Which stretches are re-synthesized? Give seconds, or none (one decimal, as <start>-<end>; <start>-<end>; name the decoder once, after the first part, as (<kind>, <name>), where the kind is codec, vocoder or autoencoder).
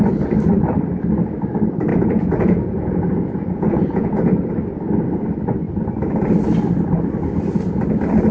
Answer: 1.9-4.5 (vocoder, Vocos)